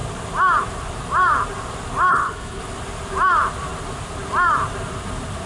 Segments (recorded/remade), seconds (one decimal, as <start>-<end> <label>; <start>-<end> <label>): 0.0-2.1 recorded; 2.1-2.6 remade; 2.6-5.5 recorded